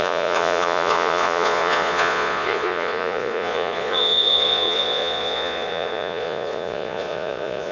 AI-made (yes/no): yes